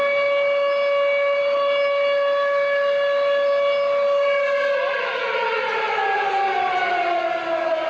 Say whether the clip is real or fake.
real